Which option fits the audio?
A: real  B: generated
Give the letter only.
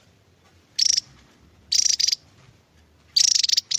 A